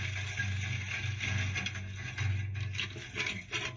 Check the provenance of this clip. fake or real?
real